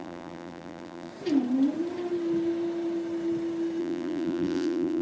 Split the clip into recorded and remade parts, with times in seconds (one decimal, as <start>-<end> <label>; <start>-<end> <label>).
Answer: 0.0-1.1 remade; 1.1-3.8 recorded; 3.8-5.0 remade